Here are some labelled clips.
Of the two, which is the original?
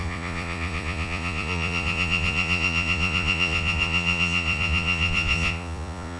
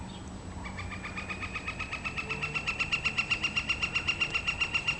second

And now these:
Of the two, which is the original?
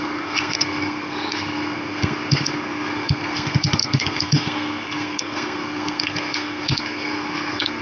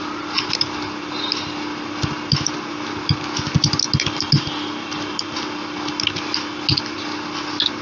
second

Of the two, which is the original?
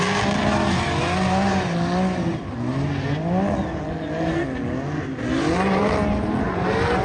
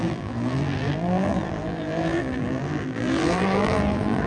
first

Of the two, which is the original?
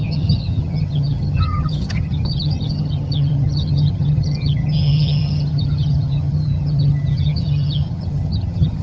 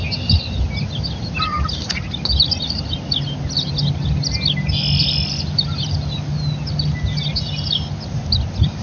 second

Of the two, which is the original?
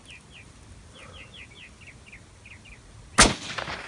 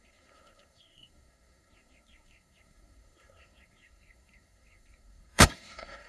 first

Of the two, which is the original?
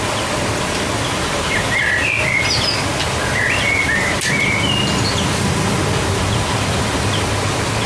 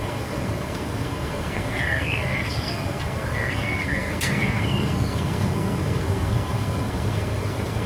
first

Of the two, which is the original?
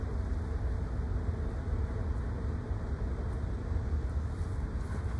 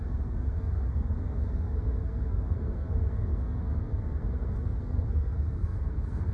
first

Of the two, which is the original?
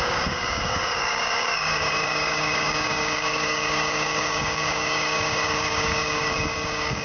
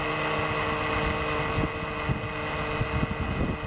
second